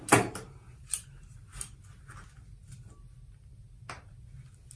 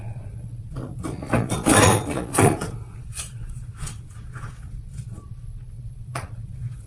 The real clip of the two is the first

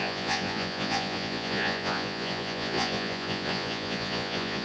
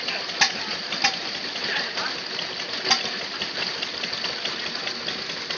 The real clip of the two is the second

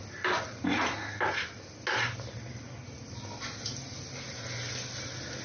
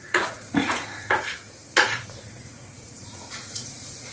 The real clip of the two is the first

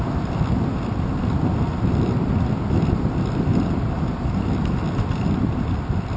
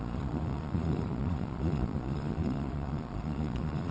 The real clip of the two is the first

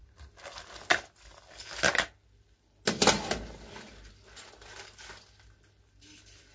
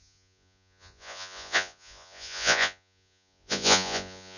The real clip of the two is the first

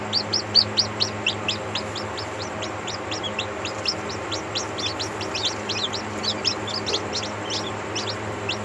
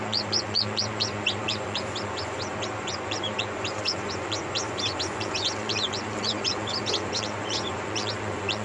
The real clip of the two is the first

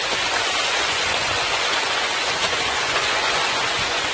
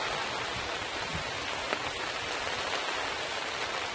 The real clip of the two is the second